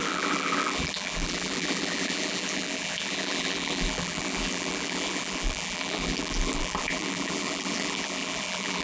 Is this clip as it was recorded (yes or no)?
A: no